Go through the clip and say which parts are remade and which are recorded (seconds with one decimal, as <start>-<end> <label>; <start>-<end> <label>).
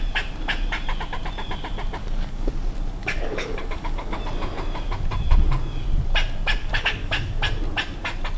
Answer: 0.0-2.0 recorded; 2.0-2.5 remade; 2.5-3.0 recorded; 3.0-4.2 remade; 4.2-6.6 recorded; 6.6-7.3 remade; 7.3-8.4 recorded